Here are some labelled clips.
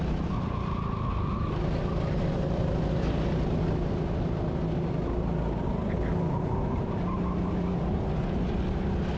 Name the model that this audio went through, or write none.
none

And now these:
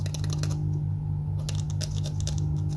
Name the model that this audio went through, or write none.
none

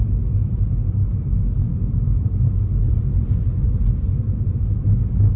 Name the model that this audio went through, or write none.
none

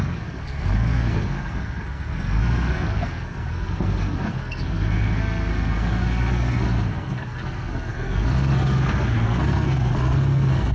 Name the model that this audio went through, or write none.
codec, SNAC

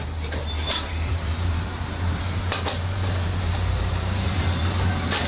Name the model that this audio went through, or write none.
vocoder, BigVGAN v2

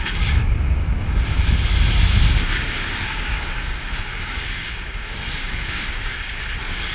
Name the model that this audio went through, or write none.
codec, DAC